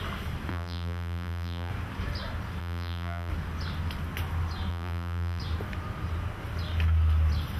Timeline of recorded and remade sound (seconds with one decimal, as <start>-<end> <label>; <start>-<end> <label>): 0.0-0.5 recorded; 0.5-1.7 remade; 1.7-2.6 recorded; 2.6-3.3 remade; 3.3-4.7 recorded; 4.7-5.4 remade; 5.4-7.6 recorded